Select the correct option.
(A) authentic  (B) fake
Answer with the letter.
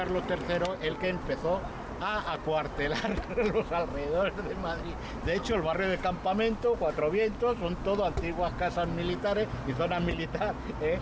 A